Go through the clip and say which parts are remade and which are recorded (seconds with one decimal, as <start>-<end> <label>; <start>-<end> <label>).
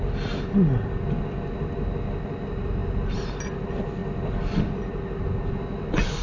0.0-6.2 recorded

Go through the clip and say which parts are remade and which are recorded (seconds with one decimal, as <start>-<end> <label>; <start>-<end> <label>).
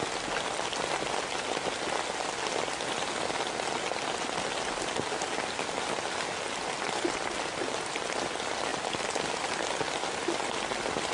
0.0-11.1 recorded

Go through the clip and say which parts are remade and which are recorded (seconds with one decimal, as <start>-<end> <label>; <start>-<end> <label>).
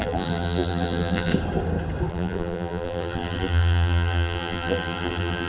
0.0-1.3 remade; 1.3-2.1 recorded; 2.1-5.5 remade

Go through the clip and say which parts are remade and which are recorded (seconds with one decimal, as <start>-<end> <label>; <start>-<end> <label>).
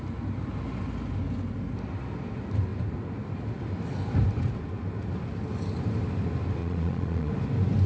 0.0-6.6 recorded; 6.6-7.3 remade; 7.3-7.9 recorded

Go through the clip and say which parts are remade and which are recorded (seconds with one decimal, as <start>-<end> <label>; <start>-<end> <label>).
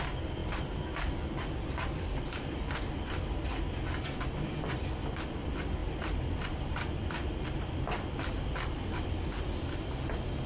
0.0-0.4 recorded; 0.4-2.8 remade; 2.8-5.8 recorded; 5.8-10.5 remade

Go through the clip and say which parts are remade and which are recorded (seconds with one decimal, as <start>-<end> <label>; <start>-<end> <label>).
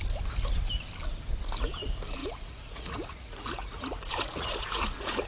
0.0-2.2 recorded; 2.2-5.3 remade